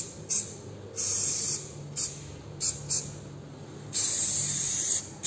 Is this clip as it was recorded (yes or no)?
yes